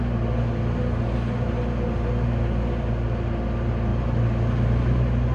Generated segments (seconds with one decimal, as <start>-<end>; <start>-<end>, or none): none